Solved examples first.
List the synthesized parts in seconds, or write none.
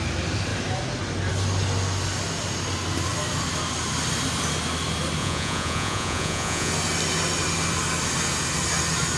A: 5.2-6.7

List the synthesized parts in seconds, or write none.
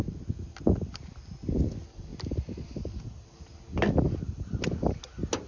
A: none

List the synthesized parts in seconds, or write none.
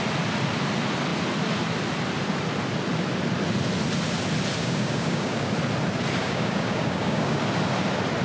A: 4.6-5.5; 6.2-7.4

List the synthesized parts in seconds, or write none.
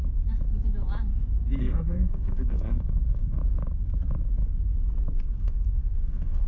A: 1.6-3.4; 5.2-6.5